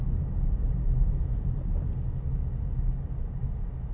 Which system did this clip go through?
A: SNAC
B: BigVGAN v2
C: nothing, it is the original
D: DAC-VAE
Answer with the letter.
C